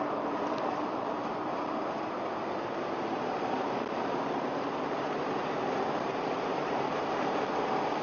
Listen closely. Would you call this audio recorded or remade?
remade